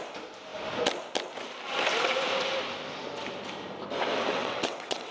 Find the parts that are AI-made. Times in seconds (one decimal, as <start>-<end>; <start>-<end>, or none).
4.3-5.1